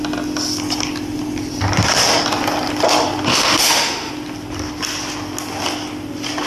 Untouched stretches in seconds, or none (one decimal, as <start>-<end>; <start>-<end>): 0.0-3.3; 4.1-6.5